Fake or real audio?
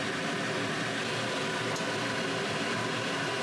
fake